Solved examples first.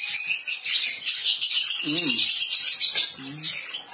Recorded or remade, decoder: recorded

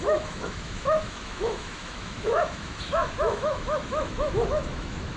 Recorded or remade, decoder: remade, autoencoder, DAC-VAE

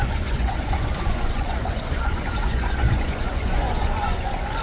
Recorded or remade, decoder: remade, vocoder, Vocos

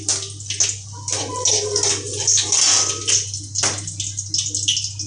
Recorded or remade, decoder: recorded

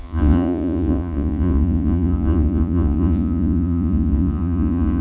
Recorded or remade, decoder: remade, vocoder, Vocos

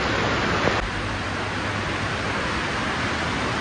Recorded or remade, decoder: recorded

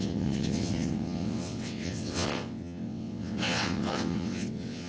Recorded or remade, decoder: remade, vocoder, WaveNeXt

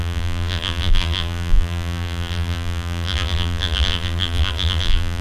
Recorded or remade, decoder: remade, vocoder, BigVGAN v2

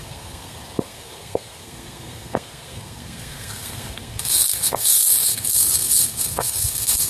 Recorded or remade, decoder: remade, codec, SNAC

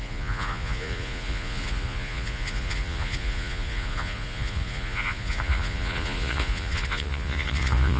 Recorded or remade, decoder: remade, vocoder, Vocos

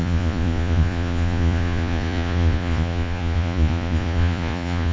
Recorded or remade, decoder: remade, vocoder, Vocos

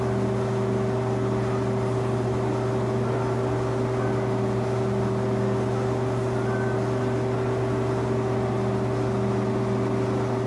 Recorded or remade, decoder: recorded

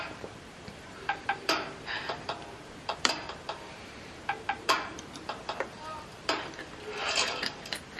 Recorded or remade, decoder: remade, vocoder, BigVGAN v2